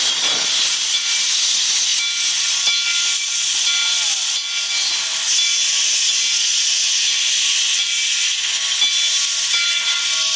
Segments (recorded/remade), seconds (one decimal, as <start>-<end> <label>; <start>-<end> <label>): 0.0-10.4 recorded